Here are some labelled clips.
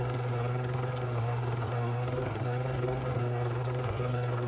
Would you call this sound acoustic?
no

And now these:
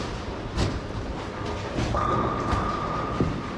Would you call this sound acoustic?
yes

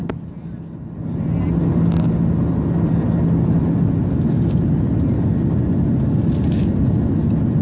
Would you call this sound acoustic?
yes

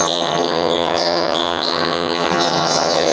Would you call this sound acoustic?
no